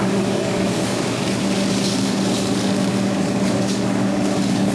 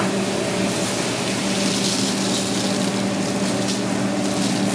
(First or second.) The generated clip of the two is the first